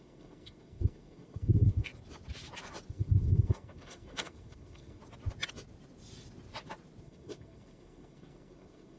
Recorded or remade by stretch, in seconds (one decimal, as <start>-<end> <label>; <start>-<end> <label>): 0.0-1.9 remade; 1.9-2.9 recorded; 2.9-5.0 remade; 5.0-7.0 recorded; 7.0-9.0 remade